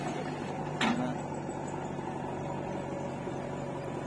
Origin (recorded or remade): recorded